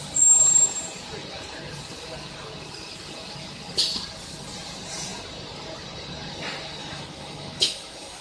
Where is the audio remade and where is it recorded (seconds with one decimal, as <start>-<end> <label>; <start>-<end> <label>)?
0.0-6.8 recorded; 6.8-8.2 remade